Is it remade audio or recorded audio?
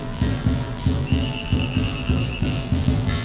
remade